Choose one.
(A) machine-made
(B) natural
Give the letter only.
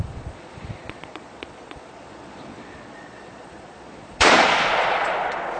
A